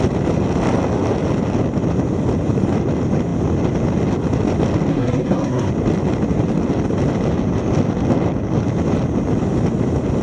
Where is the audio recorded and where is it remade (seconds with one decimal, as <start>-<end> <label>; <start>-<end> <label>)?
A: 0.0-4.9 recorded; 4.9-5.7 remade; 5.7-10.2 recorded